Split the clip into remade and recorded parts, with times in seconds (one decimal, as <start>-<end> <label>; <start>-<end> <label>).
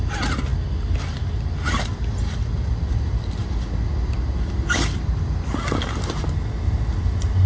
0.0-7.5 recorded